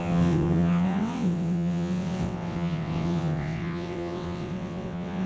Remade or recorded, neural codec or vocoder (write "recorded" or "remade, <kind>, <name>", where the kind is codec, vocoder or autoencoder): remade, vocoder, WaveNeXt